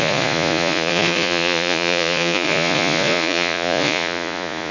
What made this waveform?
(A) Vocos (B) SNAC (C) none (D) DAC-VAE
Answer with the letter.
A